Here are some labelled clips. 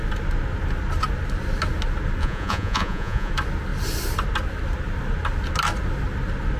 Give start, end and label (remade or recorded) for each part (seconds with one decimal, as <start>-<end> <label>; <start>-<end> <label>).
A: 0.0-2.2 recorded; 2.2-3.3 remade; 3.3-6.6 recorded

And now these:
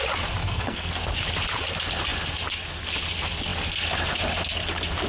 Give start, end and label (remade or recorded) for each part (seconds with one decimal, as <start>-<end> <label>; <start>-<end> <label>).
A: 0.0-0.4 recorded; 0.4-0.9 remade; 0.9-5.1 recorded

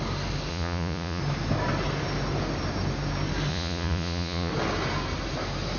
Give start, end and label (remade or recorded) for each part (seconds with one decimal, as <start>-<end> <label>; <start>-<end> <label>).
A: 0.0-0.5 recorded; 0.5-1.2 remade; 1.2-3.5 recorded; 3.5-4.5 remade; 4.5-5.8 recorded

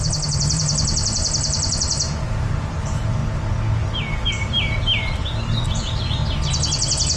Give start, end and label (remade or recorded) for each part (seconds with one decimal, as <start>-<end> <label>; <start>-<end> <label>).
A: 0.0-3.2 remade; 3.2-4.3 recorded; 4.3-6.2 remade; 6.2-7.2 recorded

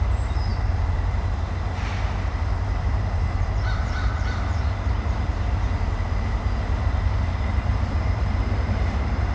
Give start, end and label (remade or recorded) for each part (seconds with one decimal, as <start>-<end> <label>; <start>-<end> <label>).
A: 0.0-9.3 remade